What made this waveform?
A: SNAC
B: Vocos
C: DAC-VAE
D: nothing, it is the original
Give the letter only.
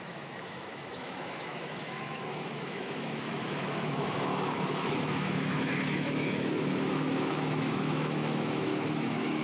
C